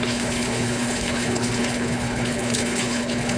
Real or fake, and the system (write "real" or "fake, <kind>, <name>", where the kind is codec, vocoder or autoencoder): fake, codec, HILCodec